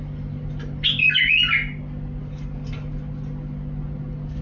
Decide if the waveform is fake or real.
real